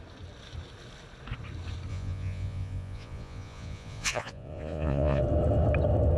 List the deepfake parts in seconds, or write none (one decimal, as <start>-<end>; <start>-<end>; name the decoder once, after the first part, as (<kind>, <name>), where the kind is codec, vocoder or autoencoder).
1.9-5.2 (vocoder, Vocos)